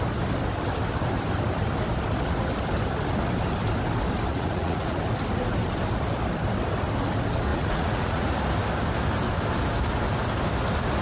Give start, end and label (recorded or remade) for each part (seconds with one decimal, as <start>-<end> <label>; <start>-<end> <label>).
0.0-4.3 recorded; 4.3-5.0 remade; 5.0-7.5 recorded; 7.5-8.3 remade; 8.3-11.0 recorded